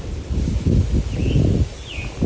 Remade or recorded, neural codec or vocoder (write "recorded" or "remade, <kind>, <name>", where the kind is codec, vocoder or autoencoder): recorded